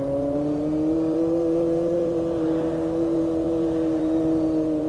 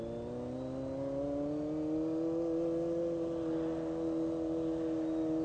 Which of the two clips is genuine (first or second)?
second